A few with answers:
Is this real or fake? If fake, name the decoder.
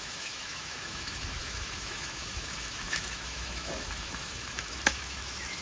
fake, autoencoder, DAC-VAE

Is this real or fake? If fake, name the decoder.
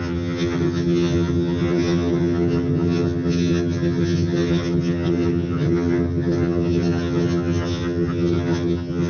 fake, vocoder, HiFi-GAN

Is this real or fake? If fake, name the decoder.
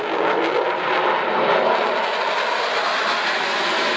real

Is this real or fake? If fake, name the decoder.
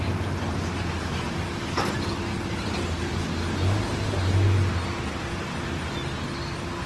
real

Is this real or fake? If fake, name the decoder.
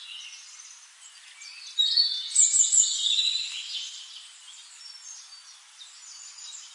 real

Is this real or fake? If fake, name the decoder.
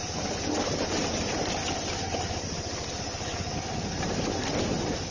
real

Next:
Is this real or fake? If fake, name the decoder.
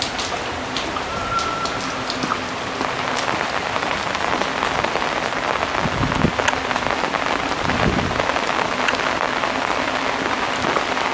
real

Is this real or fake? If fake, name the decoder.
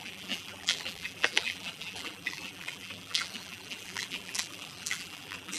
fake, vocoder, BigVGAN v2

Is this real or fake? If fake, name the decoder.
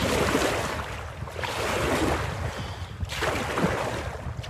real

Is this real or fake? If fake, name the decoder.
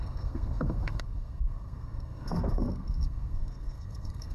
fake, codec, SNAC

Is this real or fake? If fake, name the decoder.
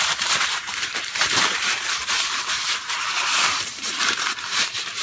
fake, vocoder, BigVGAN v2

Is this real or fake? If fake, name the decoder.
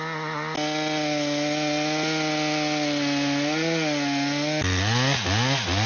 real